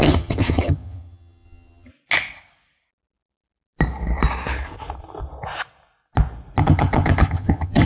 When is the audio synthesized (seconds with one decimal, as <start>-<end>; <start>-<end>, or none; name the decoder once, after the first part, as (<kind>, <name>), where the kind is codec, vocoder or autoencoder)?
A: 0.0-1.9 (vocoder, HiFi-GAN); 6.6-7.9